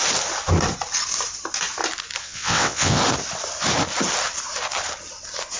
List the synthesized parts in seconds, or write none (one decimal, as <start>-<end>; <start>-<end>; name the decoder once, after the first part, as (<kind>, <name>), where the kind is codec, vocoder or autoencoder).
2.2-3.0 (vocoder, WaveNeXt)